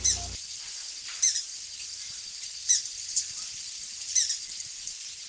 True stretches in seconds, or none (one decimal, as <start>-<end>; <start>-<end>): 0.0-5.3